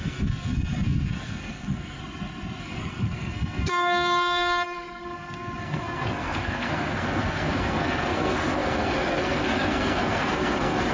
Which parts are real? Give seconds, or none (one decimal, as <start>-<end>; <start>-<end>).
2.0-2.6